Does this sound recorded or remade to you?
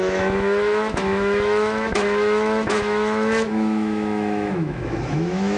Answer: remade